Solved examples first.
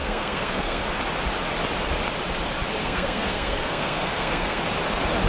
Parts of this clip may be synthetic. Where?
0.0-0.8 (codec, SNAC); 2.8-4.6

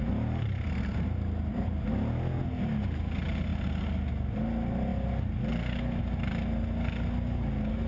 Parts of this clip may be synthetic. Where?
none

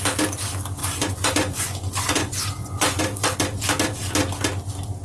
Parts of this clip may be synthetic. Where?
0.8-3.0 (vocoder, Vocos)

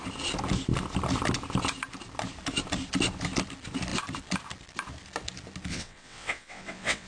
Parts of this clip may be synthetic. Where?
5.7-7.1 (vocoder, WaveNeXt)

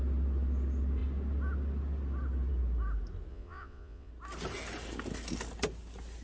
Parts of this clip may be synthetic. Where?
3.3-4.1 (vocoder, Vocos)

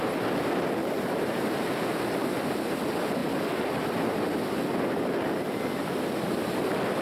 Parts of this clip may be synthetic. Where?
0.8-1.7 (vocoder, BigVGAN v2)